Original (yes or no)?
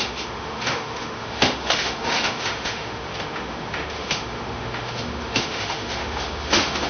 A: no